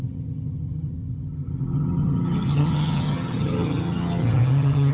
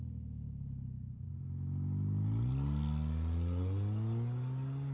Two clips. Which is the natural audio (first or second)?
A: second